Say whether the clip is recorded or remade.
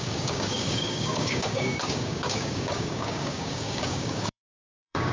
remade